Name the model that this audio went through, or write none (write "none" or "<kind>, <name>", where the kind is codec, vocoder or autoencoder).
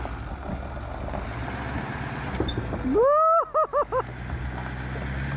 none